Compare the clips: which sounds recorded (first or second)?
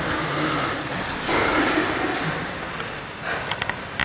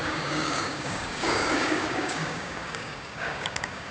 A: first